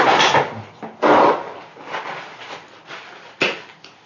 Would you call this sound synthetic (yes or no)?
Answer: no